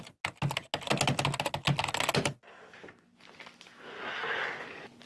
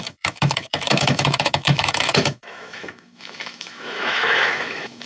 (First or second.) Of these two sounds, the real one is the first